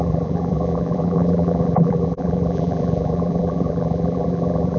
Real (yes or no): no